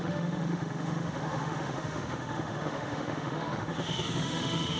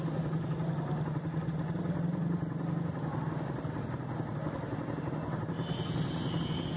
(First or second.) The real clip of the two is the second